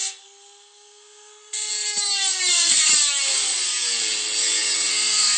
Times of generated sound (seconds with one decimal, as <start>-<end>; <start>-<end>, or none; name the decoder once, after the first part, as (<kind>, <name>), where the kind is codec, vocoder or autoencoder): 0.0-1.7 (codec, SNAC); 2.4-2.9; 4.9-5.4